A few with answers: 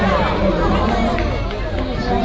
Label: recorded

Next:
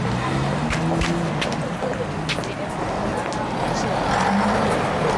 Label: recorded